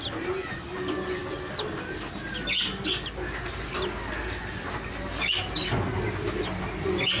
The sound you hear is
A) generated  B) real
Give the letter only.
B